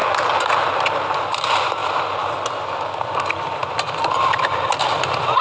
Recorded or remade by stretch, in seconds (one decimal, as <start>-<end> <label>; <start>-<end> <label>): 0.0-5.4 recorded